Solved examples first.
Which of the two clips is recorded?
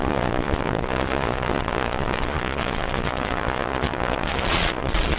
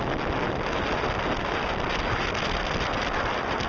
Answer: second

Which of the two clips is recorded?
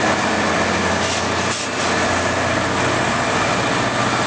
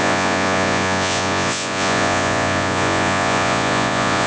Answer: first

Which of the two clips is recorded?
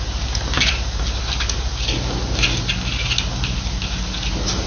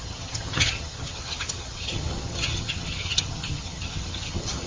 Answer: first